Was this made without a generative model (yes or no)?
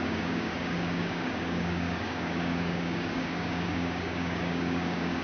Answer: no